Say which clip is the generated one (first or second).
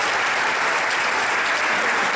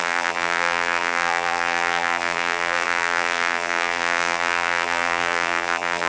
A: second